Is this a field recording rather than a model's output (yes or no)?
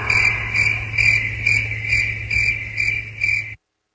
yes